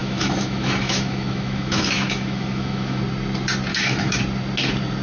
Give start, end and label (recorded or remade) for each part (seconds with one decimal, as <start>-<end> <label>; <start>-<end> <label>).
0.0-3.0 remade; 3.0-3.7 recorded; 3.7-4.2 remade; 4.2-5.0 recorded